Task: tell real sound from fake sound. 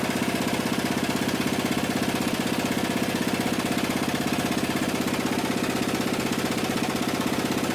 real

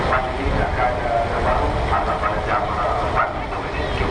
real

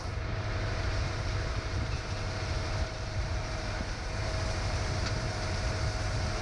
fake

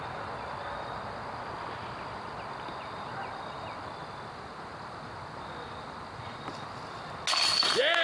real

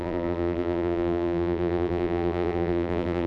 fake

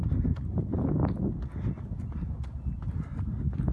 real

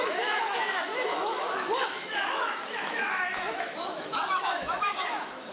fake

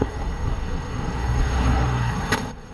fake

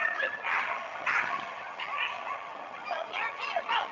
fake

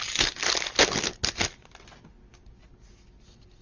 real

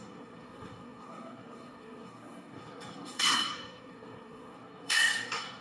fake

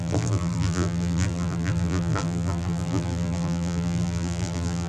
fake